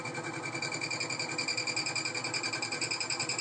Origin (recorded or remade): recorded